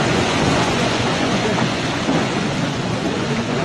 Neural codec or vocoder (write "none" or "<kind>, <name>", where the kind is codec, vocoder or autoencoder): vocoder, Vocos